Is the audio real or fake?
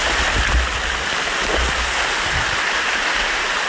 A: real